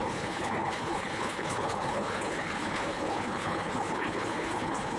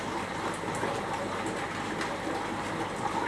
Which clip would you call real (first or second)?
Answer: second